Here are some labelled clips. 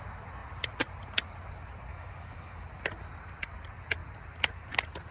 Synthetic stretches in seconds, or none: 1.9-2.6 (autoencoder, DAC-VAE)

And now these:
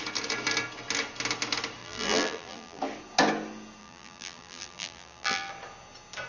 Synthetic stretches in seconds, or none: 1.8-2.8 (vocoder, BigVGAN v2); 3.8-5.5

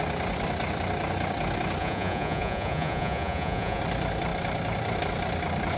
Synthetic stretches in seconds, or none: 1.8-3.8 (vocoder, Vocos)